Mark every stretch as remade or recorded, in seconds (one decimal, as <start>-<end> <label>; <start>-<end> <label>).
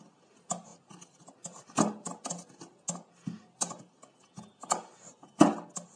0.0-6.0 recorded